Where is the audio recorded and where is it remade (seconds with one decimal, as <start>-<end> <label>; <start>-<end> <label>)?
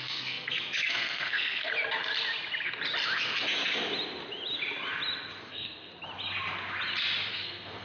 0.0-1.7 remade; 1.7-5.4 recorded; 5.4-5.9 remade; 5.9-7.3 recorded; 7.3-7.8 remade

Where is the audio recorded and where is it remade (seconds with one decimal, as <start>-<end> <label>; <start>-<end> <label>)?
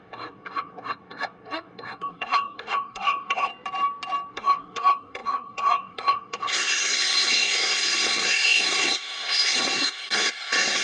0.0-3.5 remade; 3.5-4.3 recorded; 4.3-10.8 remade